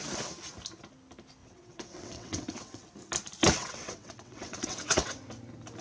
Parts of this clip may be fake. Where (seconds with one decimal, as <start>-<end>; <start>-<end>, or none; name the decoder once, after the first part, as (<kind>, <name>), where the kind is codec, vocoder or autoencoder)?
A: 1.4-2.8 (vocoder, WaveNeXt); 3.6-5.2